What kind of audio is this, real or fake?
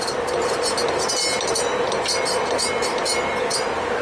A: real